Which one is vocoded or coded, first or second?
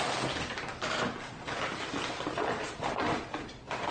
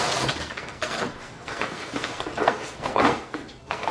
second